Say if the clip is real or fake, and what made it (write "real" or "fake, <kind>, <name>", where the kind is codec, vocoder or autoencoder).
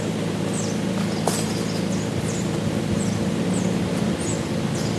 real